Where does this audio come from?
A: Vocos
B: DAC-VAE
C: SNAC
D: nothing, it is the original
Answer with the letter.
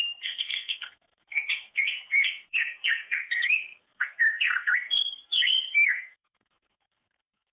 C